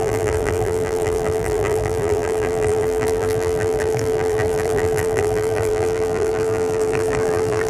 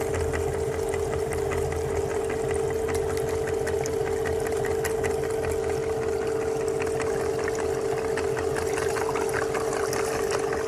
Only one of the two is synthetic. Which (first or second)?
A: first